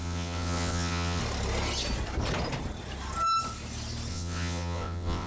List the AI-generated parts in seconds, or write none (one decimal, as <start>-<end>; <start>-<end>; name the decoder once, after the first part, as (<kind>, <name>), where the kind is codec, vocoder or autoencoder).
0.0-1.2 (vocoder, WaveNeXt); 4.1-5.3